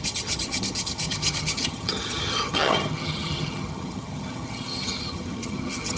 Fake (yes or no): yes